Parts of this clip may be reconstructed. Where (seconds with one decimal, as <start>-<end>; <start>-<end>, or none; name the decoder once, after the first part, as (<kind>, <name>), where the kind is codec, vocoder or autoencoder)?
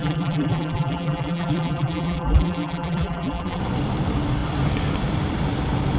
0.0-3.6 (vocoder, BigVGAN v2)